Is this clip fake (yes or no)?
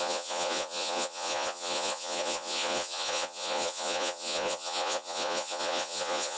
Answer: yes